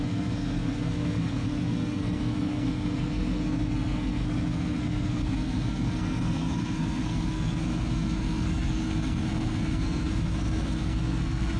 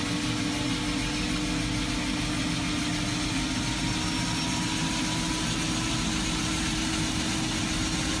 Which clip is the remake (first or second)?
first